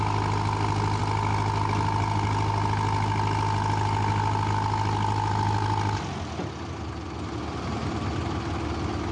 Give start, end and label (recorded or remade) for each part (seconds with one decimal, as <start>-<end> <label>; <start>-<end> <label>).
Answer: 0.0-9.1 recorded